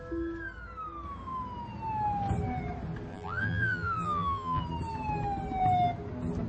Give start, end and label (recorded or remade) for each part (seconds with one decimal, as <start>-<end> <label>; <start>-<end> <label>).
0.0-3.1 recorded; 3.1-4.6 remade; 4.6-6.5 recorded